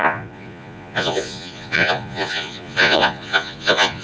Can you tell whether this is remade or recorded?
remade